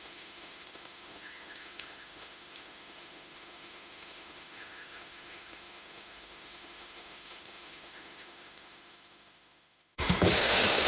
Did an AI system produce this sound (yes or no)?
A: yes